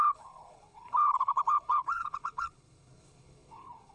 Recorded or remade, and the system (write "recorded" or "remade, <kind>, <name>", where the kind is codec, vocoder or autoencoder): remade, codec, HILCodec